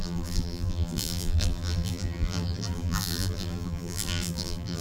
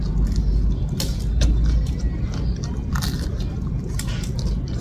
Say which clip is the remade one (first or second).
first